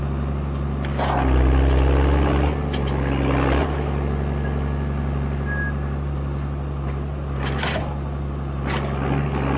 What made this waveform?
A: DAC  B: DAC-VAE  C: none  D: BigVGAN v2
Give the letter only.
C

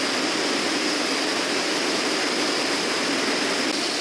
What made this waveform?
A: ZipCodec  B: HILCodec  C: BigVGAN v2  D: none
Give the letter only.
D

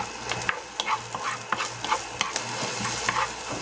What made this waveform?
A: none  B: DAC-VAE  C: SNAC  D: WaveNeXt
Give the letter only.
A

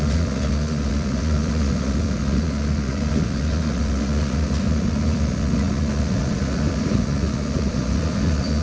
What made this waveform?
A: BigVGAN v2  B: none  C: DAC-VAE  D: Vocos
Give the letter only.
D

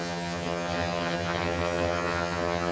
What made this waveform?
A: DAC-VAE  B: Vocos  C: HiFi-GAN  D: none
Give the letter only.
C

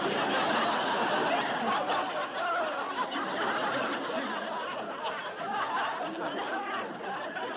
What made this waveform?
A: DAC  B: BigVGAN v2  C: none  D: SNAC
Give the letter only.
C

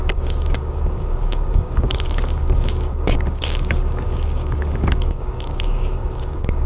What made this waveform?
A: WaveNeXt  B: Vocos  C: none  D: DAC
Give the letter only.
D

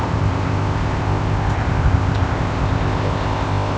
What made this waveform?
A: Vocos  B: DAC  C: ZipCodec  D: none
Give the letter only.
C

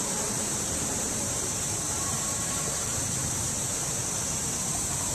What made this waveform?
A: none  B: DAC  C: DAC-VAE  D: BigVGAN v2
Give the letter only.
D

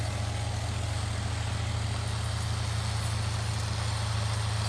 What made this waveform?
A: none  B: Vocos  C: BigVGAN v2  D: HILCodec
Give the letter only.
A